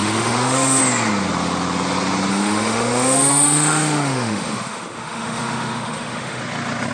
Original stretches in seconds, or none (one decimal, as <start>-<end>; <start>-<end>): 0.8-2.3; 6.4-6.9